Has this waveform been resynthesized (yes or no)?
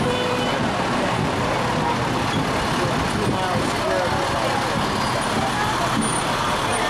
no